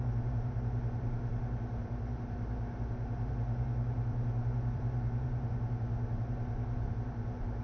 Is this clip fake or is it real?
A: fake